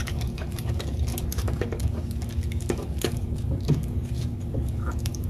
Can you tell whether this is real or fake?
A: fake